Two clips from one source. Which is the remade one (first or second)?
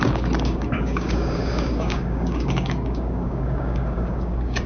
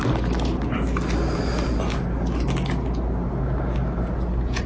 first